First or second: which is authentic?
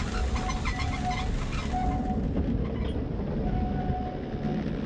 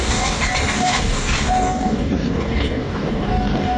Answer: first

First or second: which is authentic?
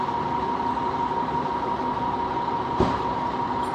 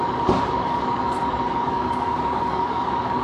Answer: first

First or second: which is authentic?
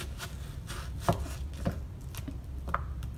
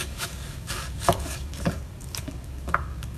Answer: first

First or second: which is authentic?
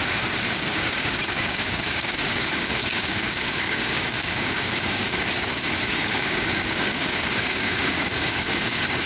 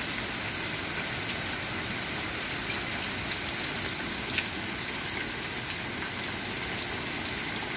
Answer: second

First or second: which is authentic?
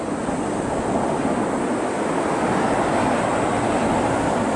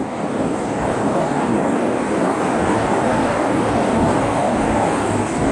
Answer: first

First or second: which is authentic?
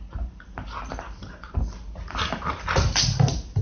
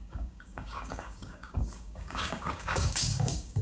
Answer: first